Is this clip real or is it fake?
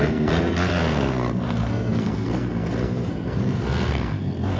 fake